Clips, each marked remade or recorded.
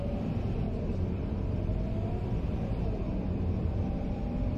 remade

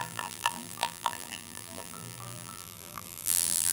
remade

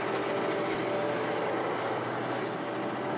recorded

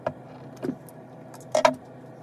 recorded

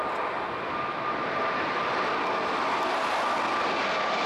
recorded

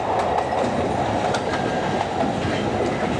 recorded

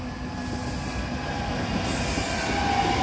recorded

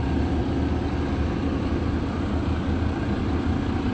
recorded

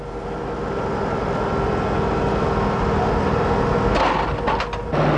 recorded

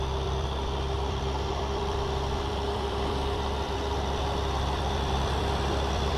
remade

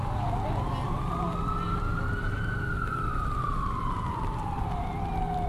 recorded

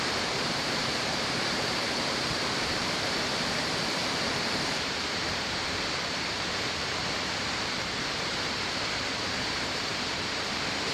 remade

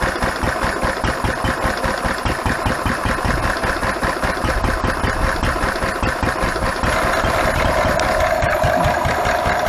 recorded